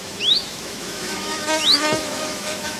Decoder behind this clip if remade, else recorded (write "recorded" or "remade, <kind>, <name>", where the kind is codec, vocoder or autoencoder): remade, autoencoder, DAC-VAE